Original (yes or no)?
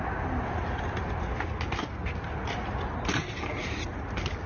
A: yes